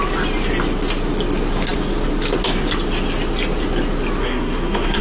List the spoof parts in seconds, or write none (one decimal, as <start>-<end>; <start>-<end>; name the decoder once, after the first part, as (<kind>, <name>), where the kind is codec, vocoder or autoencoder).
4.2-5.0 (codec, SNAC)